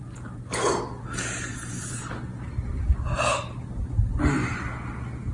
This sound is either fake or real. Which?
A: real